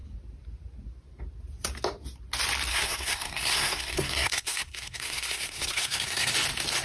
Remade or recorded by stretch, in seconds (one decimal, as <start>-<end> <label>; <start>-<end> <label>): 0.0-2.7 recorded; 2.7-6.3 remade; 6.3-6.8 recorded